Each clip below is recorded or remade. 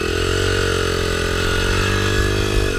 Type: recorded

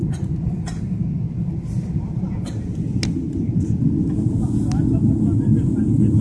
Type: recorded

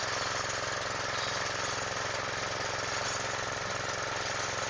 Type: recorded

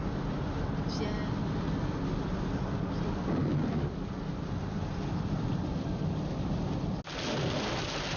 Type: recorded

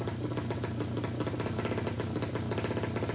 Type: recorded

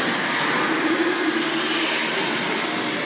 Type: recorded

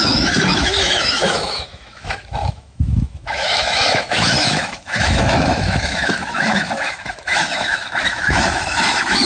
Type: remade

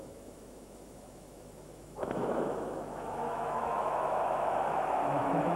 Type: remade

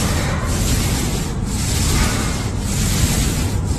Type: recorded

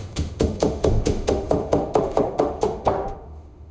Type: remade